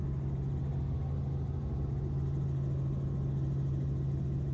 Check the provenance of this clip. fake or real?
real